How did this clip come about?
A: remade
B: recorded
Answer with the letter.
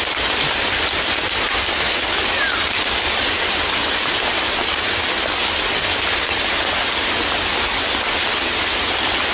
B